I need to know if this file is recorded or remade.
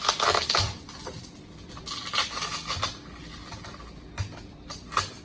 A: recorded